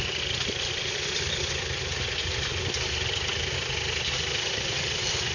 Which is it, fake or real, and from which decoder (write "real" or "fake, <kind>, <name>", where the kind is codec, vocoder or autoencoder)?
real